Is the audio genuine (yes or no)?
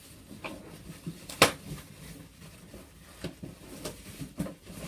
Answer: yes